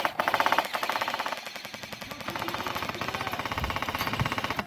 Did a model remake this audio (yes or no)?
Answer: no